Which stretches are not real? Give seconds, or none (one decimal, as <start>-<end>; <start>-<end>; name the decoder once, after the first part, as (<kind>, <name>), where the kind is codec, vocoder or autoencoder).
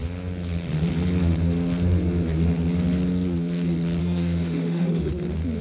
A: 4.0-5.1 (autoencoder, DAC-VAE)